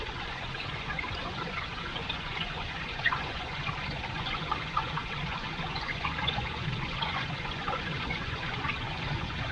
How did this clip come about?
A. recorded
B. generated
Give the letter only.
B